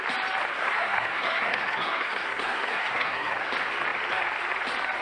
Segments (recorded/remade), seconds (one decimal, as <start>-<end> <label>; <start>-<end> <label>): 0.0-0.5 recorded; 0.5-3.5 remade; 3.5-5.0 recorded